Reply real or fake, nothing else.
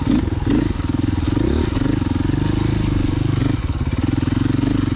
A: real